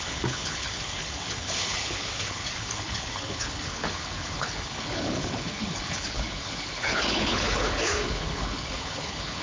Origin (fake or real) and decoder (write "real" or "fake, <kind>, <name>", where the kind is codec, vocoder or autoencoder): fake, codec, HILCodec